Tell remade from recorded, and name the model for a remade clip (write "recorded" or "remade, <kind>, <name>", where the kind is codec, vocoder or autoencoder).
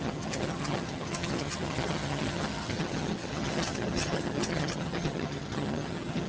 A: remade, vocoder, HiFi-GAN